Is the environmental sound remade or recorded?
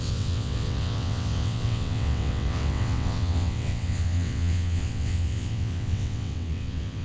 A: remade